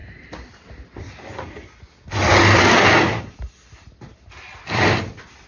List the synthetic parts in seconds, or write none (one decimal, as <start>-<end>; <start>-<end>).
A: none